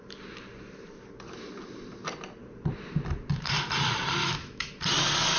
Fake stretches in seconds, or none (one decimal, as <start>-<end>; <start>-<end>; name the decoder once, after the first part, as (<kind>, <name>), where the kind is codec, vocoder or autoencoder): 4.2-4.7 (autoencoder, DAC-VAE)